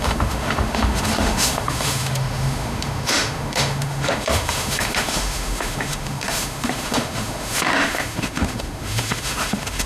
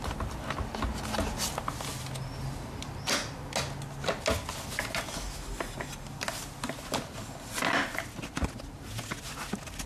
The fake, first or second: first